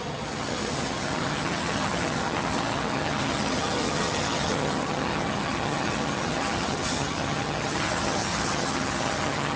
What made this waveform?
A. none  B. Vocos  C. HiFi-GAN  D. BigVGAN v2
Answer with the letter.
C